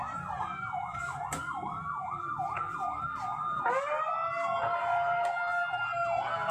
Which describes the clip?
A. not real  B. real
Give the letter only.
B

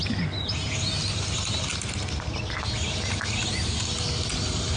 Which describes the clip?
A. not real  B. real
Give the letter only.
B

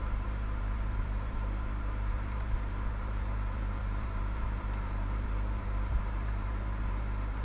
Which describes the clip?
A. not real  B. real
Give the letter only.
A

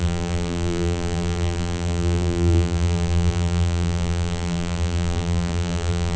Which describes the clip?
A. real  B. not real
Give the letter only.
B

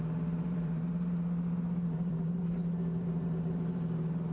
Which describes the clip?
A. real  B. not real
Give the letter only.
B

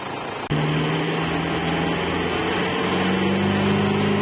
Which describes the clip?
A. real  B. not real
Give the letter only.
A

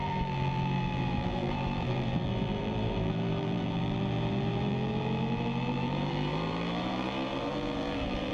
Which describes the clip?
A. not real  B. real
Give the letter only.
A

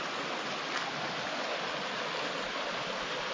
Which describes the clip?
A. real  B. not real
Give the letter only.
A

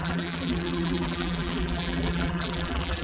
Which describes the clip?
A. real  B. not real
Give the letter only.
B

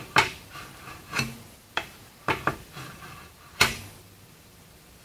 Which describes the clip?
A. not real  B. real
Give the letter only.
A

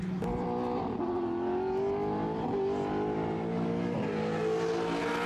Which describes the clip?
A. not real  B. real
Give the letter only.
B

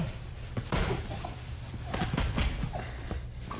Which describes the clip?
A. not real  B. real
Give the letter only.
A